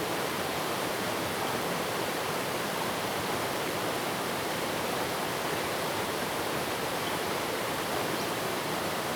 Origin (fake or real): fake